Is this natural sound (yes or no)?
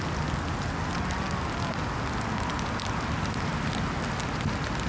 yes